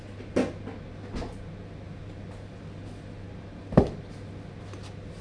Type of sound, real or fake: real